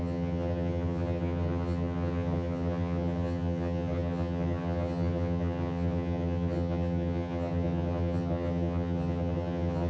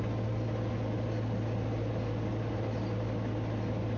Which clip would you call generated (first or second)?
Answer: first